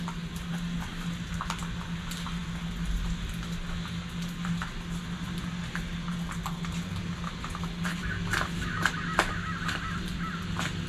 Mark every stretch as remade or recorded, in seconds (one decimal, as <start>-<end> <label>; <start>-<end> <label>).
0.0-10.9 recorded

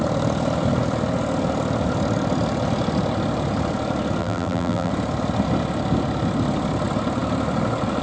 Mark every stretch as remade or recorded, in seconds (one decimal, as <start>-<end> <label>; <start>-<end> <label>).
0.0-4.2 recorded; 4.2-4.9 remade; 4.9-8.0 recorded

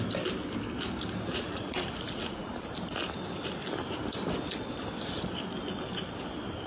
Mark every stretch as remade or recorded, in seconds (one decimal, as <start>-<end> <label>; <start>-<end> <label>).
0.0-1.3 recorded; 1.3-2.5 remade; 2.5-6.7 recorded

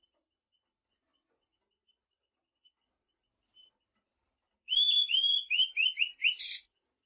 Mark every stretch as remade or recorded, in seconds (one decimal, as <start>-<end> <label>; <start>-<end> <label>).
0.0-7.1 recorded